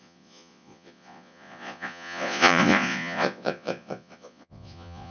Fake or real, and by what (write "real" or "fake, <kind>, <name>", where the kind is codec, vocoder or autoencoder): fake, vocoder, Vocos